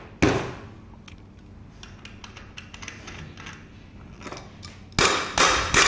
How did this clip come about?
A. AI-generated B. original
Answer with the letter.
B